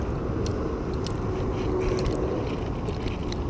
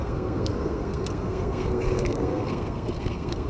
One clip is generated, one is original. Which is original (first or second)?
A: first